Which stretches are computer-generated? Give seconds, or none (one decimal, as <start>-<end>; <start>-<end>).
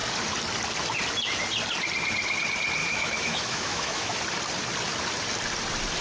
2.8-4.2